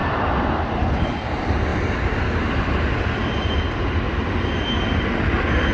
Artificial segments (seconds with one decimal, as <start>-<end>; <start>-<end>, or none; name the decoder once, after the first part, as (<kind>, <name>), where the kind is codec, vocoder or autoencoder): none